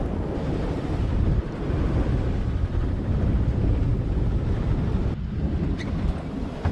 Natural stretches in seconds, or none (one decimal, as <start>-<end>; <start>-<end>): none

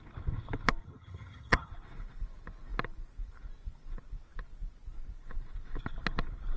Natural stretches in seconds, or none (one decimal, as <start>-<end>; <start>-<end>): 0.0-0.8; 1.7-6.6

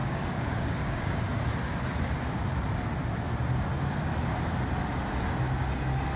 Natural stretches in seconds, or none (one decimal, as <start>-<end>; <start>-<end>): 1.2-6.2

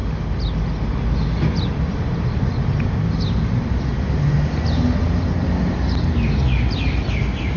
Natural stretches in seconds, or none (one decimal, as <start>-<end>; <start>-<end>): 0.0-7.6

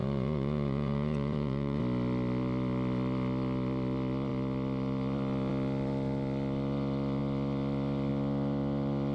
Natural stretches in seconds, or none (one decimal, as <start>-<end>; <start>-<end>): 1.8-9.1

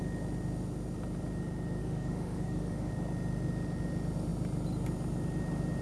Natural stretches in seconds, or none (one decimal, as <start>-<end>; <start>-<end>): 0.0-1.8; 2.9-5.8